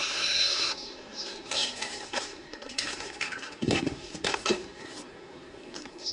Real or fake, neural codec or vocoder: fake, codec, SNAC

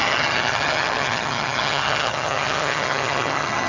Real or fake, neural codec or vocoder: fake, vocoder, HiFi-GAN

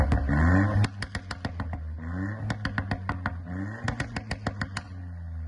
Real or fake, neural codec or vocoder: real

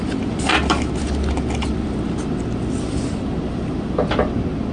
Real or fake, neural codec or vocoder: real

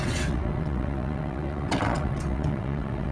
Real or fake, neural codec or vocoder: fake, vocoder, WaveNeXt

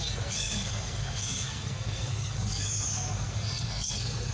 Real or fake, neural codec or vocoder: fake, codec, SNAC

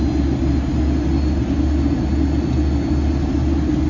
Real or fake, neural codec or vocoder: real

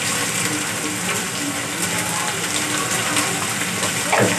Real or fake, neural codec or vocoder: real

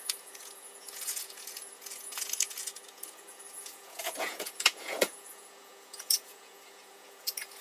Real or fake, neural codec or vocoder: fake, vocoder, Vocos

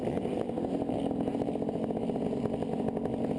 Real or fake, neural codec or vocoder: real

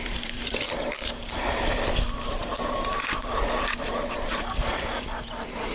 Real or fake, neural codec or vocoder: fake, vocoder, BigVGAN v2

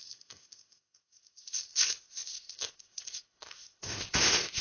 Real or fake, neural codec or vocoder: fake, codec, ZipCodec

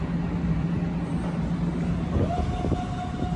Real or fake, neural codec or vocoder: real